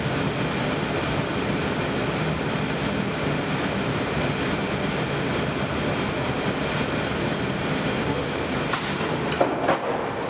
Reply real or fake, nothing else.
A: real